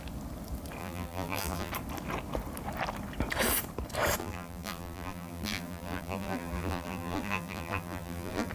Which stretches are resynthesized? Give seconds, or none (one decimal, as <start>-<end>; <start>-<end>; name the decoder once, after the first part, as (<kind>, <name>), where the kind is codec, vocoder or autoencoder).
0.8-1.7 (vocoder, BigVGAN v2); 4.2-8.5